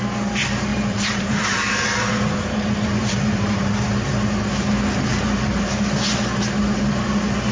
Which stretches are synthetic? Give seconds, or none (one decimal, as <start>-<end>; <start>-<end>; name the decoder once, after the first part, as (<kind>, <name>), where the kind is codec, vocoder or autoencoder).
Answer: 0.7-3.7 (vocoder, BigVGAN v2); 5.1-5.7